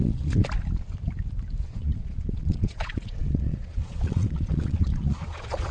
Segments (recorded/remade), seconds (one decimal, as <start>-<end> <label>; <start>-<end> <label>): 0.0-0.4 remade; 0.4-1.6 recorded; 1.6-5.7 remade